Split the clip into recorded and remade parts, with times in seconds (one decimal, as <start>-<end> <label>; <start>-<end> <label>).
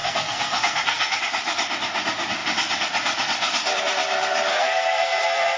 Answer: 0.0-1.2 remade; 1.2-4.5 recorded; 4.5-5.6 remade